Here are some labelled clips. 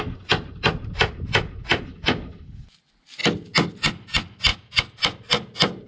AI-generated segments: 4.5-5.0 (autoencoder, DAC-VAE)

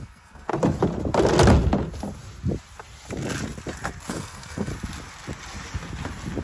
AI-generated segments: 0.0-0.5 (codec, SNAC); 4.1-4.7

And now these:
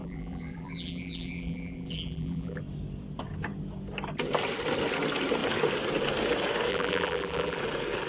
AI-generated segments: 0.0-2.6 (vocoder, BigVGAN v2); 6.7-7.6